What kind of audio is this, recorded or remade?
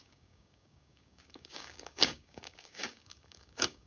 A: remade